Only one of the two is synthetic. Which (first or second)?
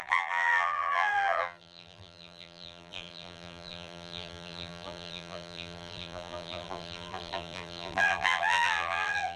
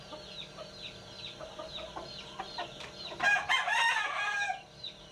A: first